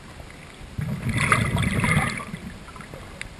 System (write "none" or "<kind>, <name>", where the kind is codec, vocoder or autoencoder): none